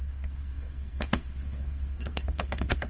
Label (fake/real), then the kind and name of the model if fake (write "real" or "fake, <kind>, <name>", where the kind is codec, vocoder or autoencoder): fake, codec, SNAC